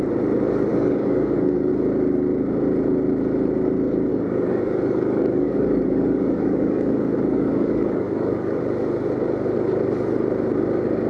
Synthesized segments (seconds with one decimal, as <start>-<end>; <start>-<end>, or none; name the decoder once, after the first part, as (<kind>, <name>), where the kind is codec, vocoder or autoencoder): 0.7-1.7 (codec, DAC); 4.1-8.6